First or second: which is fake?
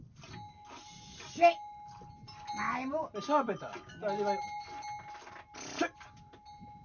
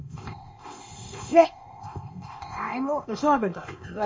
second